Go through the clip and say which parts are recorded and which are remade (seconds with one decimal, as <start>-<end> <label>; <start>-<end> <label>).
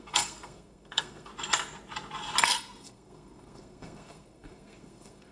0.0-1.3 remade; 1.3-2.4 recorded; 2.4-5.3 remade